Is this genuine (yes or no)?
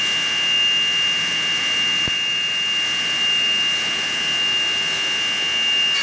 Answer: yes